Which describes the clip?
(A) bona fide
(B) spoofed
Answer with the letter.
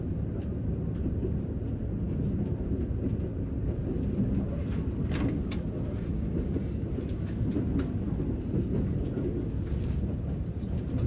A